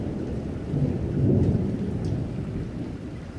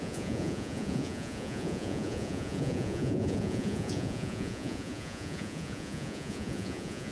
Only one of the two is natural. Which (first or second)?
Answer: first